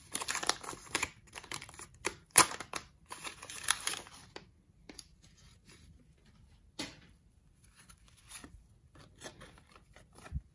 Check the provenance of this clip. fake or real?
fake